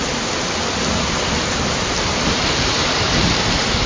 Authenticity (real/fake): real